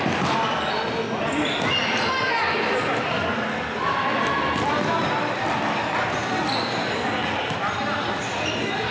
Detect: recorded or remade recorded